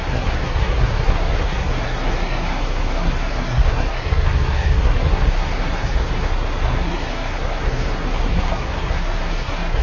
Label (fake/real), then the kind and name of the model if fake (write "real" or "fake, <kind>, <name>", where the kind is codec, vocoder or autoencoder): fake, codec, SNAC